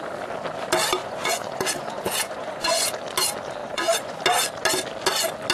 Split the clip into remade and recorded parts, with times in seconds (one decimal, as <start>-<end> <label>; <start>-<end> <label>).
0.0-1.0 recorded; 1.0-2.9 remade; 2.9-3.6 recorded; 3.6-4.2 remade; 4.2-5.5 recorded